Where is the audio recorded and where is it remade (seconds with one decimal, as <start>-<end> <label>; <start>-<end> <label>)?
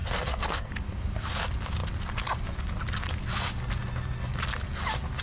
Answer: 0.0-0.7 remade; 0.7-5.2 recorded